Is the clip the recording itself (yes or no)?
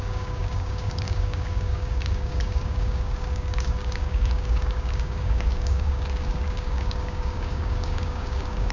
no